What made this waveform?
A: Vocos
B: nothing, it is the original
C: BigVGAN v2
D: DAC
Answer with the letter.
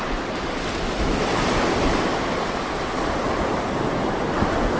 B